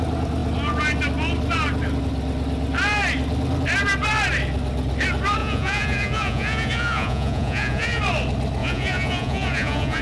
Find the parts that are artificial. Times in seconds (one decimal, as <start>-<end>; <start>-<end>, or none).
5.4-8.0; 8.6-10.0